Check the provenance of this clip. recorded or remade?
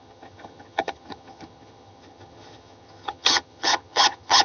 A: remade